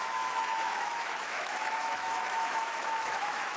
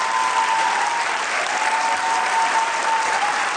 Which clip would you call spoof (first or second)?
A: first